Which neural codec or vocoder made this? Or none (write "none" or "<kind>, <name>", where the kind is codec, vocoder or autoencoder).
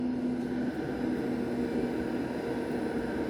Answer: none